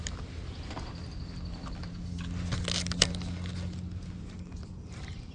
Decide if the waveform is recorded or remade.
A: recorded